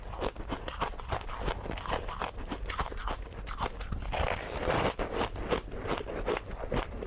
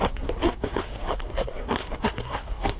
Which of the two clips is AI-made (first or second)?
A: second